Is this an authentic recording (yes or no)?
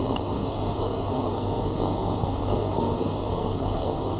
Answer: no